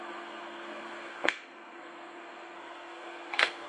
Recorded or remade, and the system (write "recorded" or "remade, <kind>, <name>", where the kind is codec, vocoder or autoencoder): remade, codec, SNAC